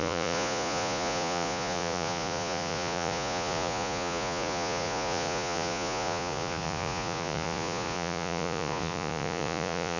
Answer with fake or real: fake